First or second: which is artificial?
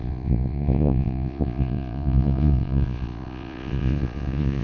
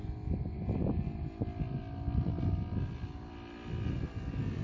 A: first